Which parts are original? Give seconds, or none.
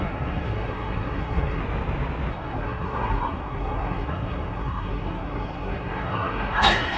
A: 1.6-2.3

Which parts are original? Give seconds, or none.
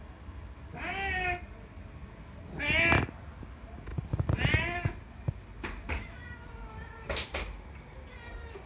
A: 0.0-8.7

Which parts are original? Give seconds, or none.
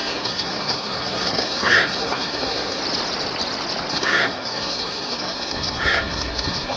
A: 2.8-3.9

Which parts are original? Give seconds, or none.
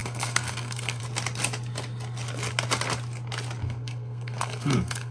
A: 1.0-3.6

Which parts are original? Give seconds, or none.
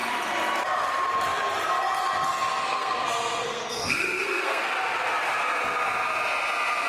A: 0.0-2.7; 4.7-6.9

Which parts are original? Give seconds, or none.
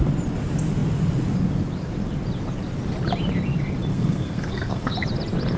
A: 0.0-3.9; 4.9-5.6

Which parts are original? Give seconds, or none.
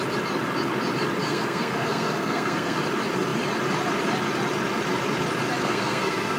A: 0.0-1.2; 2.8-5.6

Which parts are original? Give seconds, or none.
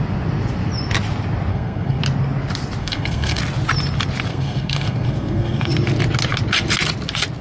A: 0.0-1.5; 2.0-2.8; 3.4-4.3; 5.7-7.4